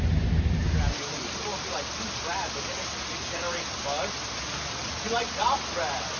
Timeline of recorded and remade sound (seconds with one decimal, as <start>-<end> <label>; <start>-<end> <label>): 0.0-6.2 recorded